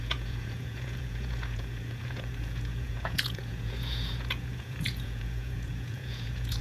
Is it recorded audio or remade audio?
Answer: remade